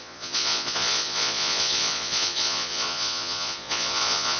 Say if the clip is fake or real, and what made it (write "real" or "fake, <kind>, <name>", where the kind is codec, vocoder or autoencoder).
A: fake, vocoder, Vocos